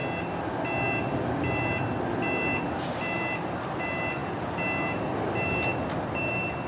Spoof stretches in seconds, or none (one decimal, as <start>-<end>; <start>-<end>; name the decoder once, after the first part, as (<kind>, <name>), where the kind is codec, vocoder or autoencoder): none